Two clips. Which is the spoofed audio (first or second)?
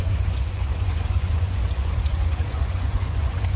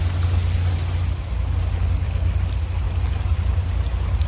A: first